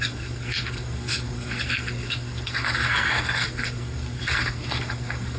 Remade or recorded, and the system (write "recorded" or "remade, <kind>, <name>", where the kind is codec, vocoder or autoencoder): remade, codec, SNAC